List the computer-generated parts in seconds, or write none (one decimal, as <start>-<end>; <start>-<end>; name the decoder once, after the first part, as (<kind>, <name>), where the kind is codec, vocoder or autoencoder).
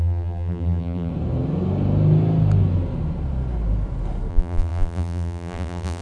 0.0-1.1 (vocoder, BigVGAN v2); 4.3-6.0